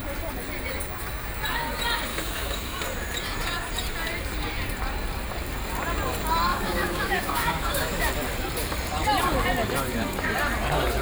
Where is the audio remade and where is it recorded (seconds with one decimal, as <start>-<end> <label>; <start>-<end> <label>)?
0.0-2.1 recorded; 2.1-2.8 remade; 2.8-6.5 recorded; 6.5-8.1 remade; 8.1-11.0 recorded